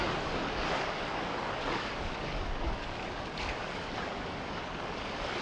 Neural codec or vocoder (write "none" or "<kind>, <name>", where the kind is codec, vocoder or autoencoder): codec, DAC